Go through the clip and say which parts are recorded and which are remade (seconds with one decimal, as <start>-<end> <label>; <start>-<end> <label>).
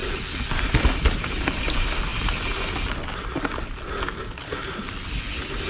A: 0.0-5.7 recorded